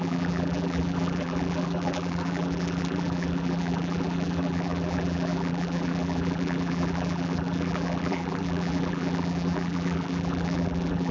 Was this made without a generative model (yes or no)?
no